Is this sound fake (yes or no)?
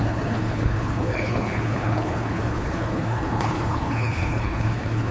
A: yes